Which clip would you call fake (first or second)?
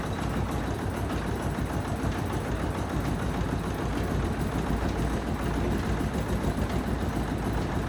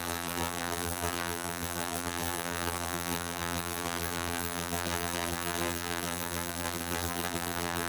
second